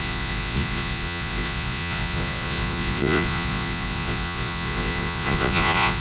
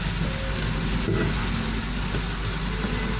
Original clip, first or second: second